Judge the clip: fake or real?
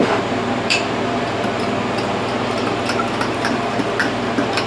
fake